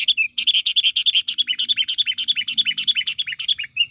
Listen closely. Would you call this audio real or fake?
real